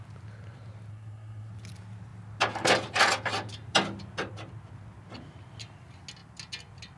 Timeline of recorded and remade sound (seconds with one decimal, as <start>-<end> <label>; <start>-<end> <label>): 0.0-0.9 recorded; 0.9-1.5 remade; 1.5-7.0 recorded